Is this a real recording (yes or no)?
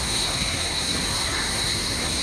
no